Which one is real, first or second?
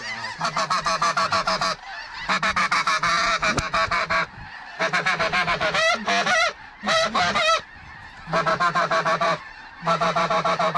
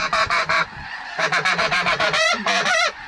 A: first